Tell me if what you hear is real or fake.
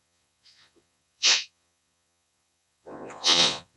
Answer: fake